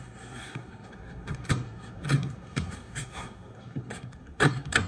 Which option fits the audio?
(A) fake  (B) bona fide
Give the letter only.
A